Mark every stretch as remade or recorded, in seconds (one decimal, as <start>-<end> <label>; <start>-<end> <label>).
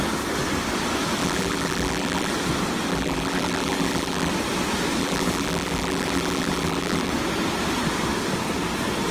0.0-1.2 recorded; 1.2-2.3 remade; 2.3-2.9 recorded; 2.9-4.3 remade; 4.3-5.0 recorded; 5.0-7.1 remade; 7.1-9.1 recorded